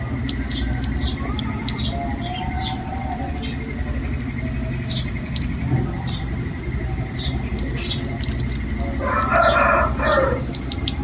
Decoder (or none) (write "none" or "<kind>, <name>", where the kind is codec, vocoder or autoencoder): none